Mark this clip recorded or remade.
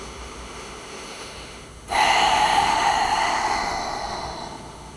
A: remade